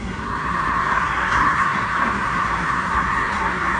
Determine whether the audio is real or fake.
fake